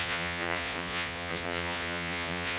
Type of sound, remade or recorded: remade